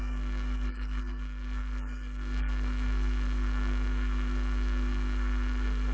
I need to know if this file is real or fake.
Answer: fake